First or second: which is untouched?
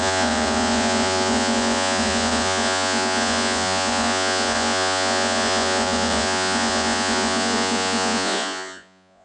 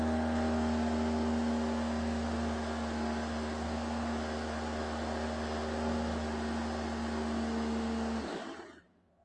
second